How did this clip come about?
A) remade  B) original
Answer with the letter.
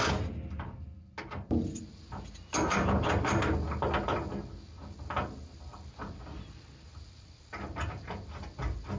B